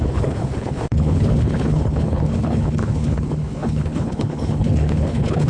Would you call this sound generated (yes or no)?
yes